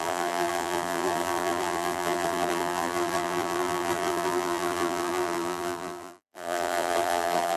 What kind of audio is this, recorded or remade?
remade